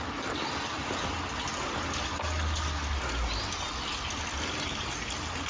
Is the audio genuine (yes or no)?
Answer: yes